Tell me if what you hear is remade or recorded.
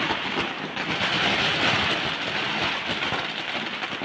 recorded